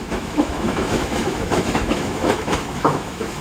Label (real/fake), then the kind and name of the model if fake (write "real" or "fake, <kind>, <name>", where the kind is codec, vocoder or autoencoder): fake, autoencoder, DAC-VAE